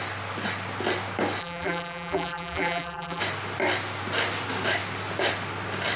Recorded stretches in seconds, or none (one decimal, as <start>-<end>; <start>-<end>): 0.0-1.4; 3.2-6.0